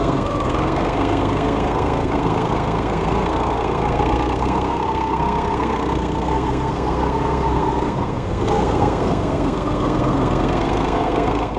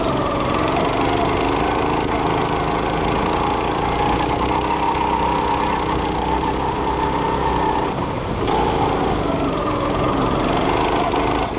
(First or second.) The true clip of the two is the second